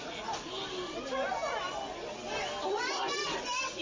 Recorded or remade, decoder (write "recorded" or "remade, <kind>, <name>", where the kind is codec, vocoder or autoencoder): recorded